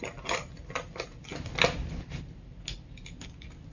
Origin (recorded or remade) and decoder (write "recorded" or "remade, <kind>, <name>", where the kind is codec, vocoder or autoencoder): recorded